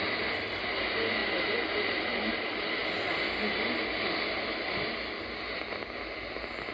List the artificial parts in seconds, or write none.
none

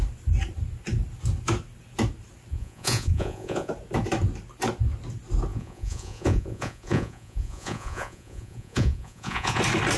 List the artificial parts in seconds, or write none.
2.5-3.7 (vocoder, Vocos); 5.5-9.6

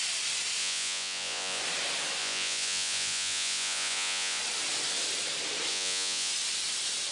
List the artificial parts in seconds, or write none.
0.6-1.6 (vocoder, Vocos); 2.2-4.4; 5.7-6.3